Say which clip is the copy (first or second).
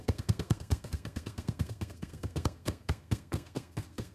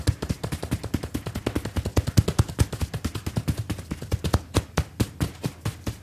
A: first